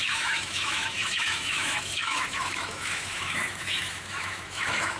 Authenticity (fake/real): fake